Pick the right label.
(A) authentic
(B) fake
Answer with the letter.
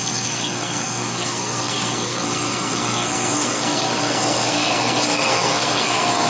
B